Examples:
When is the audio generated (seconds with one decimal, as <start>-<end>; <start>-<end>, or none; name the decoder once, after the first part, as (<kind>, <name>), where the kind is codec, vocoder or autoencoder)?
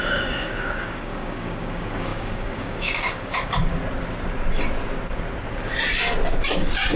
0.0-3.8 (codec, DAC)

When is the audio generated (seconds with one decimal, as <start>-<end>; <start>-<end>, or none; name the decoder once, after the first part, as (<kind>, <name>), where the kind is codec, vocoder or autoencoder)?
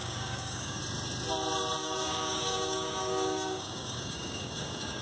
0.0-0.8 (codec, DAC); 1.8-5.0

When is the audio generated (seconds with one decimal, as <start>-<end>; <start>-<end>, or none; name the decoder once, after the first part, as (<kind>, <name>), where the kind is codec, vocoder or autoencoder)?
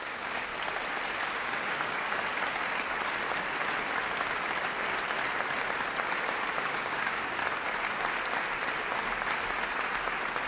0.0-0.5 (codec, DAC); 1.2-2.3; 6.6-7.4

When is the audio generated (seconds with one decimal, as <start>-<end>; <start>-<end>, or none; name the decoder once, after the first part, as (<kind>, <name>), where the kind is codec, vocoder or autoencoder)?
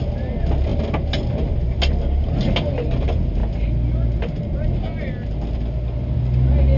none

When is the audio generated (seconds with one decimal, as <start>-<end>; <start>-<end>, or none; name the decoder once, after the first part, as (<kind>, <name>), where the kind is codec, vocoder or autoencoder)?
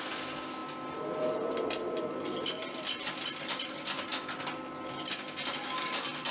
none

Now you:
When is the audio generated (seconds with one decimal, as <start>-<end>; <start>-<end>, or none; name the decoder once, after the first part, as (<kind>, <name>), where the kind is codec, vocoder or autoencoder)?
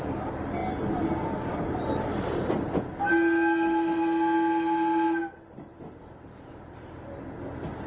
none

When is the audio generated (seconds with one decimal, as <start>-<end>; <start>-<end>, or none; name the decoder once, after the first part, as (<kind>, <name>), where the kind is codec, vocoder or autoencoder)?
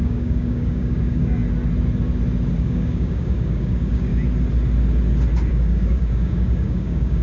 0.0-1.4 (codec, DAC); 2.6-4.1; 5.5-7.2